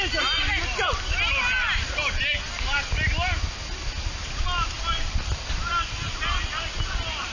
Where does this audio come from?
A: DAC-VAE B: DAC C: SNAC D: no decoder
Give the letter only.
D